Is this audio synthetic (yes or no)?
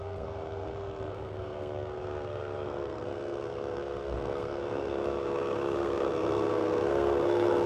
yes